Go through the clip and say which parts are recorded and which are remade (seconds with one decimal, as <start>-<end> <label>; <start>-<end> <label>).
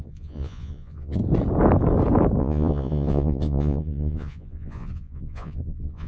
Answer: 0.0-1.2 remade; 1.2-2.4 recorded; 2.4-6.1 remade